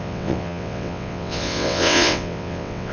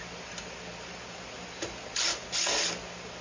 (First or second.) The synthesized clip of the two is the first